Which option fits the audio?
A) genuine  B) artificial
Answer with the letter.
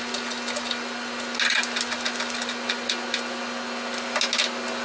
A